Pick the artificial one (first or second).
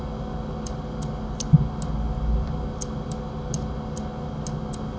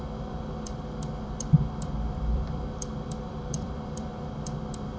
second